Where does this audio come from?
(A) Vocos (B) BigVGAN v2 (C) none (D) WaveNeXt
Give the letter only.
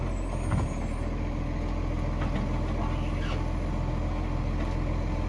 C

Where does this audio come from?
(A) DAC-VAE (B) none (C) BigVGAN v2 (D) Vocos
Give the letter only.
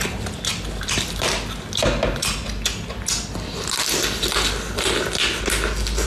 B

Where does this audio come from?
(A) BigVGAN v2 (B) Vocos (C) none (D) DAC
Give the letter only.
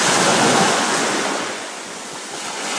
B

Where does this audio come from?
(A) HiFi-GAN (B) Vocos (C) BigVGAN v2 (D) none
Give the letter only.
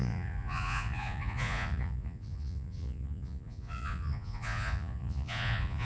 B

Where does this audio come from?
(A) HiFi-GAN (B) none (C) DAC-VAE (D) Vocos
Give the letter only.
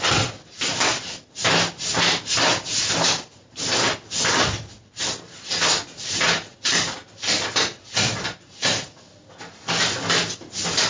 B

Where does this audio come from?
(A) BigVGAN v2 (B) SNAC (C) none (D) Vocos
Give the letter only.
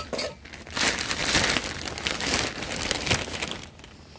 C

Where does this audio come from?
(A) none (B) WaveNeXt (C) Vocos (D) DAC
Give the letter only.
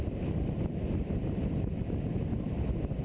A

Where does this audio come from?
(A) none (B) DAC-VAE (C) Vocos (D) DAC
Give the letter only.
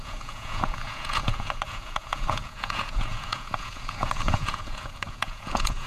C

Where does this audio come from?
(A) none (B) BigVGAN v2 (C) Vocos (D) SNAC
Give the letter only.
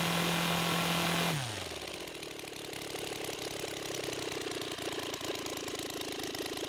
A